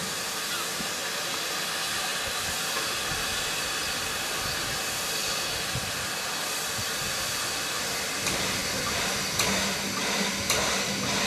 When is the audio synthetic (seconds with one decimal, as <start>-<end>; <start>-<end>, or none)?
none